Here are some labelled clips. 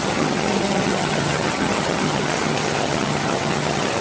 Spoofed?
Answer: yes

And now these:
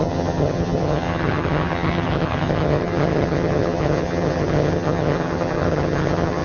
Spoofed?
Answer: yes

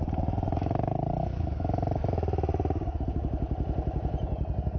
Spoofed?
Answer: no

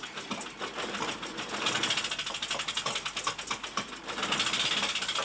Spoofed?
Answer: no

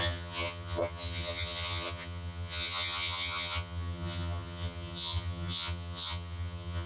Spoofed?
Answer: yes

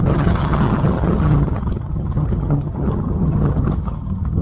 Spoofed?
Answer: yes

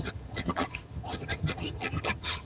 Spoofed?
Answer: yes